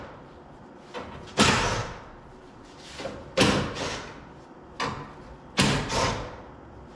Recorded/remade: recorded